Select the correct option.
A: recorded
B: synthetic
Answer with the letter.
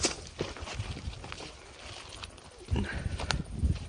A